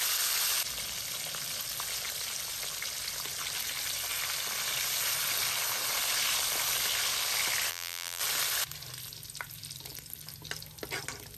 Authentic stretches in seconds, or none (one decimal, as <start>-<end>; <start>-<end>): 0.0-7.7; 8.2-11.4